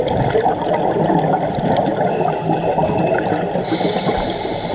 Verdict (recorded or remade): recorded